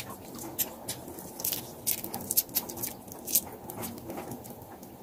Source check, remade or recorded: recorded